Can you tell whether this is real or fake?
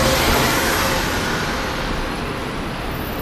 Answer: real